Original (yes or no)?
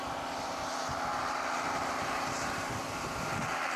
yes